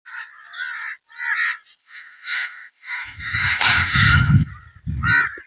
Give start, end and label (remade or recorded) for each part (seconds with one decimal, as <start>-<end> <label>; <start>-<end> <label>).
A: 0.0-1.8 recorded; 1.8-4.5 remade; 4.5-5.5 recorded